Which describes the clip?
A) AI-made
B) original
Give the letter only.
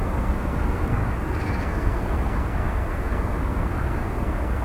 A